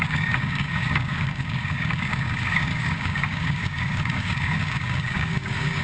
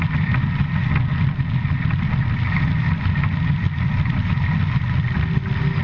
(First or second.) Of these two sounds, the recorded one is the second